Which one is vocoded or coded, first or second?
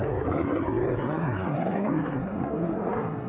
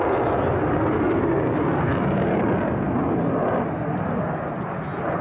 first